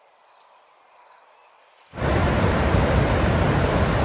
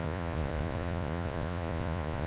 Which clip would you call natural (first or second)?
first